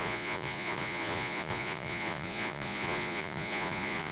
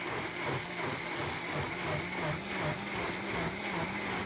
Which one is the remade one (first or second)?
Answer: first